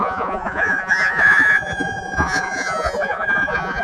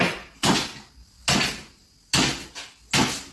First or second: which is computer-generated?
first